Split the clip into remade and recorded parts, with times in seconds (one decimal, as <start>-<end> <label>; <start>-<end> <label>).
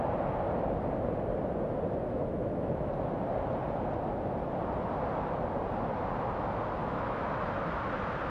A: 0.0-2.0 recorded; 2.0-2.9 remade; 2.9-6.8 recorded; 6.8-7.5 remade; 7.5-8.3 recorded